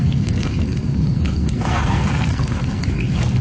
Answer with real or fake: fake